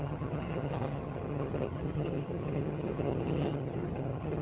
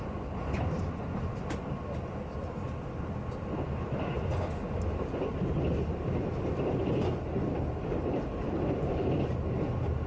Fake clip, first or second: first